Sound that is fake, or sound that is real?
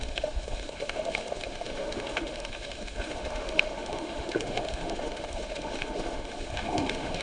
fake